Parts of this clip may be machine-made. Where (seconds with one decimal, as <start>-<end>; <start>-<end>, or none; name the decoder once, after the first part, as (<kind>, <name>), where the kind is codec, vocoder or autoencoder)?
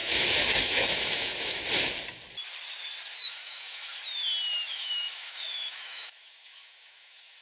0.0-1.6 (autoencoder, DAC-VAE); 3.2-3.9; 4.7-7.4